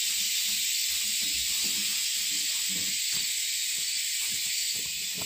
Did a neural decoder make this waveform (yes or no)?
no